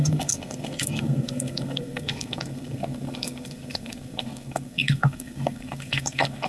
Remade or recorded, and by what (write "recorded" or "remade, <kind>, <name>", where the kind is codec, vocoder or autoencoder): remade, codec, SNAC